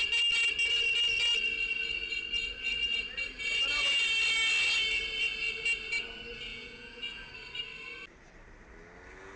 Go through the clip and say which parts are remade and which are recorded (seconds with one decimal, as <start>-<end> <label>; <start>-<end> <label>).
0.0-6.5 recorded; 6.5-7.3 remade; 7.3-9.4 recorded